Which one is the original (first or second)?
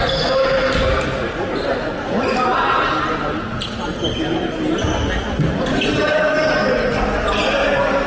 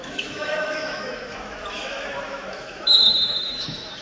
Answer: first